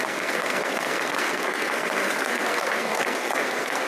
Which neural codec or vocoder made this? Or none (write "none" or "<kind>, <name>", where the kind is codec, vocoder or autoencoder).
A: codec, SNAC